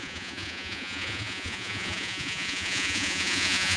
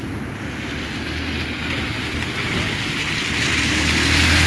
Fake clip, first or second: first